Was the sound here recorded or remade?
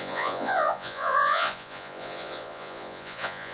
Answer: remade